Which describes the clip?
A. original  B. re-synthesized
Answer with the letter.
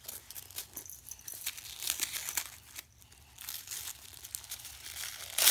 A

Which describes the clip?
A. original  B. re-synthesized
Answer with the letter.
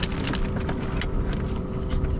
A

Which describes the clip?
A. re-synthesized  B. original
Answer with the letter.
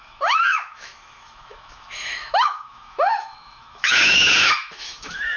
A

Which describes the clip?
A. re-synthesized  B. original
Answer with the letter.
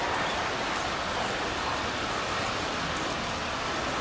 B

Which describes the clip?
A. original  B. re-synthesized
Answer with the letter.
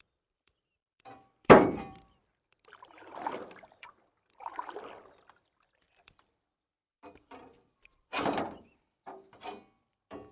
B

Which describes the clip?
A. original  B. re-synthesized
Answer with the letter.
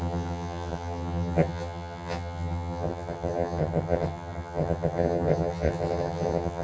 B